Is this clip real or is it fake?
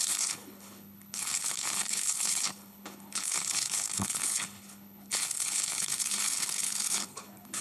fake